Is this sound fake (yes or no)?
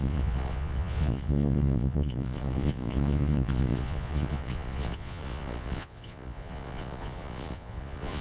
yes